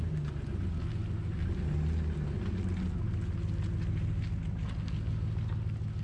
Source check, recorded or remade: recorded